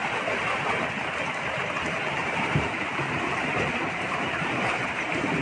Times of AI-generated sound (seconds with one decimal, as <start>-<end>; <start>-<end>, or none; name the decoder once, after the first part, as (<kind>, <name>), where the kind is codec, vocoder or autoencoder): 0.0-0.7 (vocoder, BigVGAN v2); 2.2-5.4